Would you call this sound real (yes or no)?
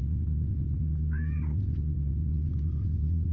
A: no